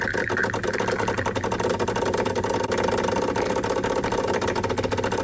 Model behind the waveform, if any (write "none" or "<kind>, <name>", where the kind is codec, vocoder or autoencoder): none